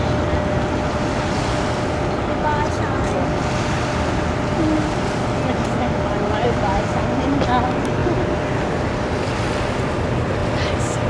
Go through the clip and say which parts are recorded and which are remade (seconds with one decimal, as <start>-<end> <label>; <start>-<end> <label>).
0.0-2.5 recorded; 2.5-3.9 remade; 3.9-11.1 recorded